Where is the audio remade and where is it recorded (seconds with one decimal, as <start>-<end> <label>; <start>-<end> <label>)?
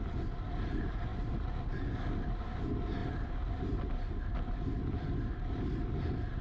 0.0-6.4 recorded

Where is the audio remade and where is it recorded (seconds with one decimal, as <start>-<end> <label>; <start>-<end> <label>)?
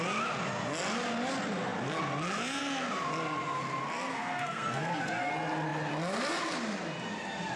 0.0-4.1 recorded; 4.1-5.3 remade; 5.3-7.6 recorded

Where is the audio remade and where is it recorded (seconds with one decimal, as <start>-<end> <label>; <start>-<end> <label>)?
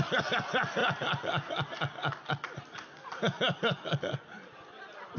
0.0-5.2 recorded